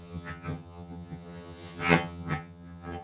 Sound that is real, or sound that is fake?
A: fake